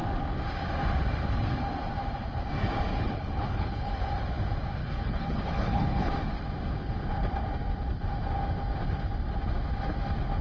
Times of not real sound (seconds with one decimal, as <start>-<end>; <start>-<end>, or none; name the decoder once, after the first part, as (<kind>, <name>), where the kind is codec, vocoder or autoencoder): 2.9-3.9 (codec, HILCodec); 4.8-6.1

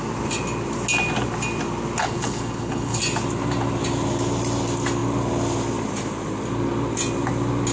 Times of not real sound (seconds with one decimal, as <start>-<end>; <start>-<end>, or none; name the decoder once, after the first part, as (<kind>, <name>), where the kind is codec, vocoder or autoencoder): 2.0-3.0 (codec, HILCodec)

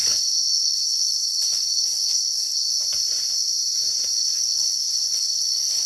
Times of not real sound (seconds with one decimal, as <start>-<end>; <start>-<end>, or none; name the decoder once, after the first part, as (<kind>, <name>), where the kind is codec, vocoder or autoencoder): 0.0-2.7 (codec, HILCodec); 4.2-5.9

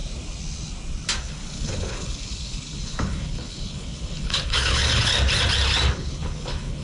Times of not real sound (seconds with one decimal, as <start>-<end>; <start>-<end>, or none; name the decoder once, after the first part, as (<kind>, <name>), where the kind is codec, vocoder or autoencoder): 1.2-5.1 (codec, HILCodec); 5.9-6.8

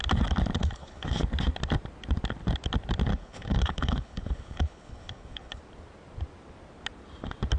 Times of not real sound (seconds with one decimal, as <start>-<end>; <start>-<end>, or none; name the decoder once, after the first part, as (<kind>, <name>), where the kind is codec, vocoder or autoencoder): 0.6-1.2 (codec, HILCodec); 3.1-5.6

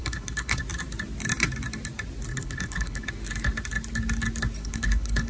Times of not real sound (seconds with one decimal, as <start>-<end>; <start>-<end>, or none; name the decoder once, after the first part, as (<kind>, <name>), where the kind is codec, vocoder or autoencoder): 0.0-0.6 (codec, HILCodec); 2.3-3.1; 4.6-5.3